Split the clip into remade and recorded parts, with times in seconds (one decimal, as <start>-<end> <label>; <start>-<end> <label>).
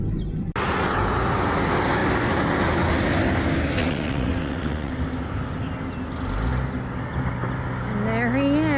0.0-3.8 recorded; 3.8-4.9 remade; 4.9-8.8 recorded